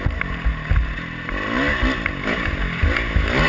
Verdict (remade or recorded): recorded